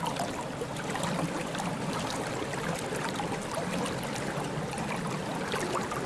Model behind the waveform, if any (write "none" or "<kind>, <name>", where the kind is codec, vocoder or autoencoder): none